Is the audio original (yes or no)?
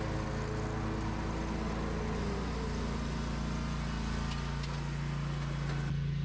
yes